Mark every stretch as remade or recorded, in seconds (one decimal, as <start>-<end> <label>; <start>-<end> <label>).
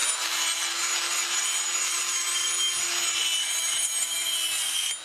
0.0-5.0 recorded